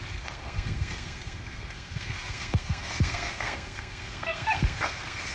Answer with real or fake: fake